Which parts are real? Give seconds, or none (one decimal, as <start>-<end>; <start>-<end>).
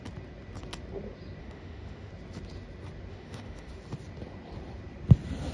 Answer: 0.0-1.4; 2.1-3.1; 3.7-5.5